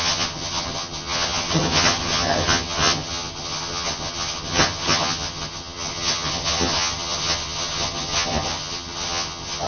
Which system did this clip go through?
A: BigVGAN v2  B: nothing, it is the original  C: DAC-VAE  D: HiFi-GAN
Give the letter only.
D